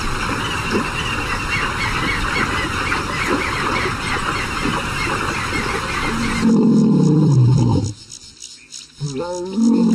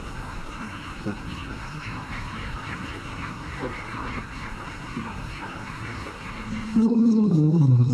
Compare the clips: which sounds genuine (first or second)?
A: first